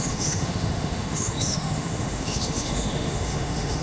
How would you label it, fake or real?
fake